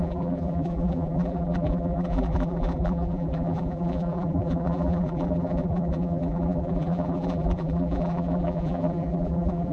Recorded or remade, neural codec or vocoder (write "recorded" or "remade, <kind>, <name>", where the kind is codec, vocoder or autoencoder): remade, vocoder, BigVGAN v2